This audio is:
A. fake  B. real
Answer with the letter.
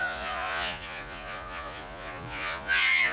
A